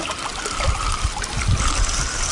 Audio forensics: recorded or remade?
recorded